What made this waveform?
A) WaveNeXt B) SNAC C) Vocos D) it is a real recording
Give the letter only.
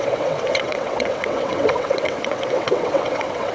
A